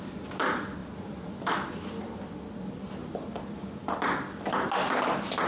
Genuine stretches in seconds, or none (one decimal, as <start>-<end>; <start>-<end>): 0.0-0.8; 1.7-3.0; 3.8-5.5